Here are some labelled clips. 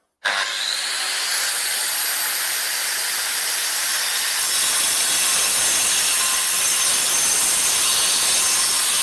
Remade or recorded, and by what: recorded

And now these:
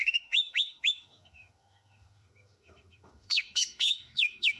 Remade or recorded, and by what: remade, autoencoder, DAC-VAE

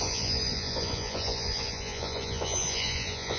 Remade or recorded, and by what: remade, vocoder, Vocos